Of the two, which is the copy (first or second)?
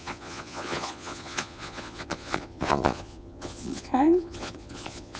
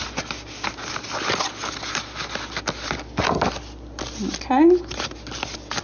first